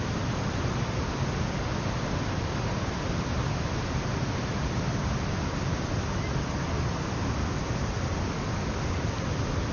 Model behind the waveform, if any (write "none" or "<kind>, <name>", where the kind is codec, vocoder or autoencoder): none